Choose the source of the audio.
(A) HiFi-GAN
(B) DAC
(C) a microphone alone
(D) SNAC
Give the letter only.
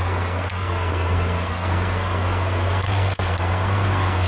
D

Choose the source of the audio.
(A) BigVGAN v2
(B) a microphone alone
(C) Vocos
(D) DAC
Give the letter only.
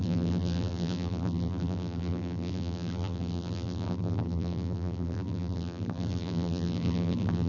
A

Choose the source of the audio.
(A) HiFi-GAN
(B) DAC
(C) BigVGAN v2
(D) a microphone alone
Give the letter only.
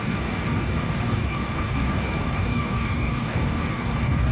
B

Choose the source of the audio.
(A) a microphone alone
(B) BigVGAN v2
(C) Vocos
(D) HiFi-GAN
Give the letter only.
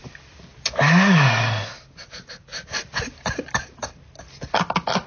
A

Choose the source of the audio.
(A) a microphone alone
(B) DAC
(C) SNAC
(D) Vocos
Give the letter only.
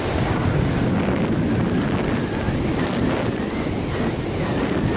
A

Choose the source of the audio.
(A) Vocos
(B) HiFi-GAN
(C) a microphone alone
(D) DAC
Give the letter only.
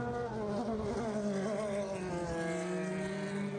C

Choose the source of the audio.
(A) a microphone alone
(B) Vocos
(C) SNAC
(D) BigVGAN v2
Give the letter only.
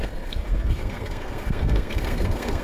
C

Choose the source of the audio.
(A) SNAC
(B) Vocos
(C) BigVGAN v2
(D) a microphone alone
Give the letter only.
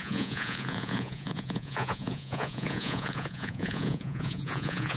B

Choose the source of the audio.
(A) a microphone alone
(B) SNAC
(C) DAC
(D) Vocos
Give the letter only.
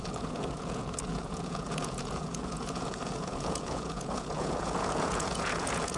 D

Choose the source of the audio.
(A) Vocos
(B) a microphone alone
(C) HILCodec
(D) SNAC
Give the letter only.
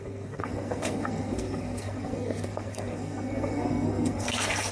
D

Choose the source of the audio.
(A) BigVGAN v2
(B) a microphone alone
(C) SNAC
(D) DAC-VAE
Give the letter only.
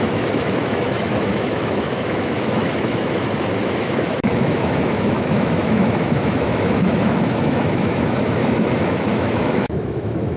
D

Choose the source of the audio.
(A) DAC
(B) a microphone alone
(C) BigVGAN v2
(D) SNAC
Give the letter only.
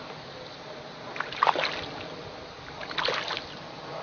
B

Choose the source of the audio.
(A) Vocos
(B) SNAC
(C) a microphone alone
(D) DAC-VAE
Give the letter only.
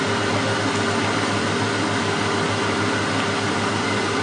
C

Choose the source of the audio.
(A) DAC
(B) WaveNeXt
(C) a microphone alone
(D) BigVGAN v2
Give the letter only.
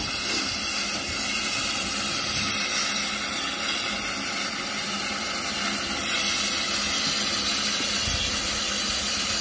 C